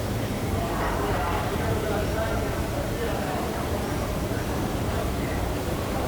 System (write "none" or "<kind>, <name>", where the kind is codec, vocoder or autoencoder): vocoder, BigVGAN v2